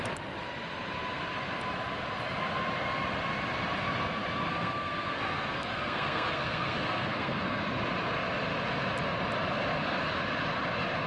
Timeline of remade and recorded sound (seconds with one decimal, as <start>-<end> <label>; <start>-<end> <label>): 0.0-4.5 recorded; 4.5-7.6 remade; 7.6-11.1 recorded